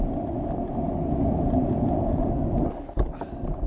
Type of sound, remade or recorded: recorded